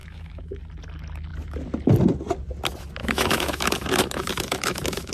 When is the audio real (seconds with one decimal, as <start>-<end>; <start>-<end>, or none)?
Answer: 0.6-3.0